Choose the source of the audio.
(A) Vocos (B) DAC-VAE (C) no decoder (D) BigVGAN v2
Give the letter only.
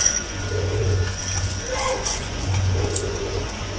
A